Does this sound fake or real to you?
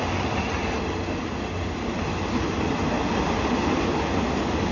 real